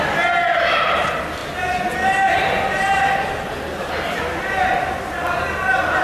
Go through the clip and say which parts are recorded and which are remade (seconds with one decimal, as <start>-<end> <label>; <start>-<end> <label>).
0.0-6.0 recorded